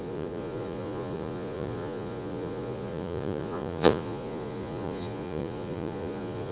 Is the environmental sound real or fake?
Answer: fake